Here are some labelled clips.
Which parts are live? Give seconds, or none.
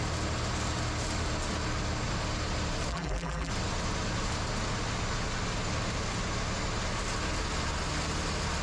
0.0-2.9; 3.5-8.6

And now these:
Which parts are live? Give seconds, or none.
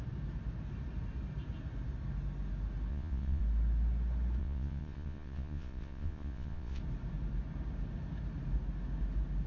0.0-2.9; 3.4-4.4; 6.8-9.5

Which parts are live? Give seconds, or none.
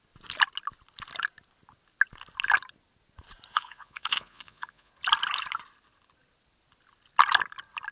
0.0-3.5; 4.9-7.9